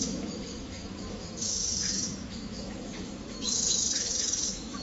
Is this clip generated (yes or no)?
yes